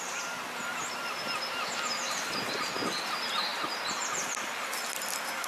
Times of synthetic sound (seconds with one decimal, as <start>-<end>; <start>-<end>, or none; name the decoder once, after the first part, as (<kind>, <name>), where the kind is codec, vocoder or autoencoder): none